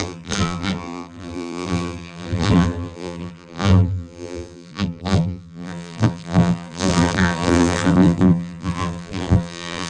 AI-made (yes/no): yes